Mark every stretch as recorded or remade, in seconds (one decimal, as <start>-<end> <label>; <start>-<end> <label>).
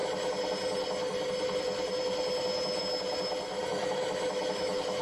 0.0-3.7 recorded; 3.7-5.0 remade